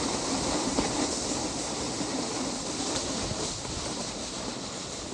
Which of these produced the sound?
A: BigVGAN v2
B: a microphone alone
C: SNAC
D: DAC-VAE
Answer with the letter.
B